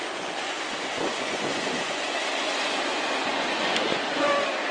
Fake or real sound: fake